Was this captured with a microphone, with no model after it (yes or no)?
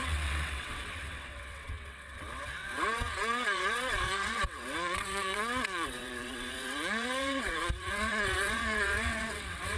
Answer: no